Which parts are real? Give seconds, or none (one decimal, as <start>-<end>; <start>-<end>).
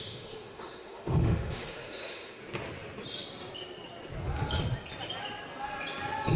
2.4-6.4